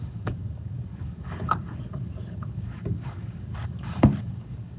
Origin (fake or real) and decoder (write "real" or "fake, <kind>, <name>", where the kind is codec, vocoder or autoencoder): fake, codec, DAC